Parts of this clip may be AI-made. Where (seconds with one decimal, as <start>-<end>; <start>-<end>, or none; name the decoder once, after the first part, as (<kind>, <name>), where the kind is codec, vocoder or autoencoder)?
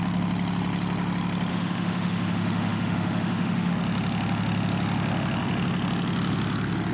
1.5-3.7 (autoencoder, DAC-VAE)